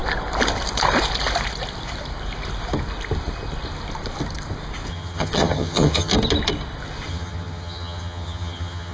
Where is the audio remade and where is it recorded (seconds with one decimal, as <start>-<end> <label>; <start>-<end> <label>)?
0.0-4.9 recorded; 4.9-6.1 remade; 6.1-7.1 recorded; 7.1-8.9 remade